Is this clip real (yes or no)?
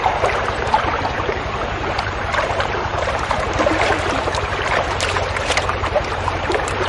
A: no